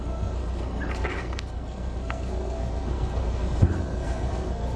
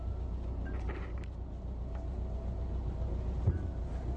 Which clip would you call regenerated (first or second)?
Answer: first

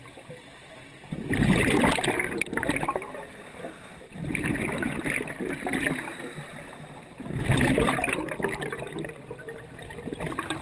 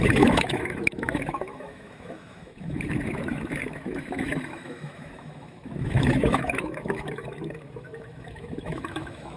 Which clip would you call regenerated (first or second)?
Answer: second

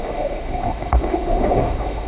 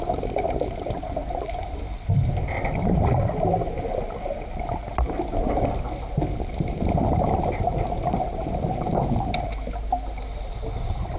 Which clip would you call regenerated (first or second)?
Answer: first